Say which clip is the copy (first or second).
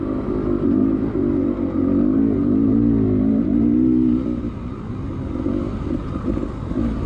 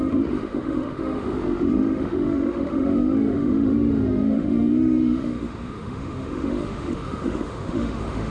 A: second